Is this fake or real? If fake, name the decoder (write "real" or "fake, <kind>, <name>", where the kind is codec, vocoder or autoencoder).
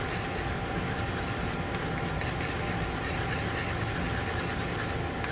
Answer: real